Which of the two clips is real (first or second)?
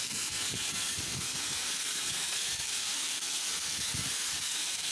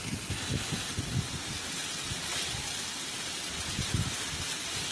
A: second